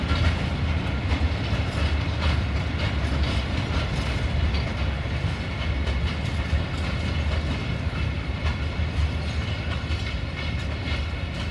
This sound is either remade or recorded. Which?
recorded